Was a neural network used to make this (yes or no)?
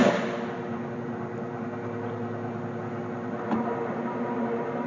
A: no